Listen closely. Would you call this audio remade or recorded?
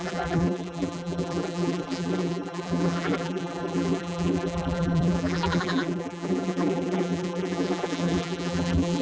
remade